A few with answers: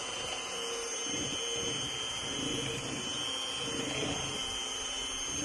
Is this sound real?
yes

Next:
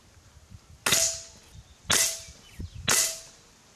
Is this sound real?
yes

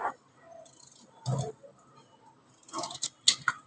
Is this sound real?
yes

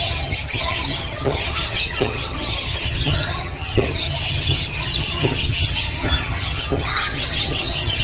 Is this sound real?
no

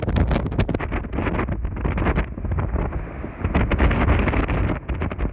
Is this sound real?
yes